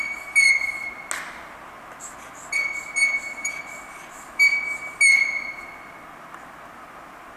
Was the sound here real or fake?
real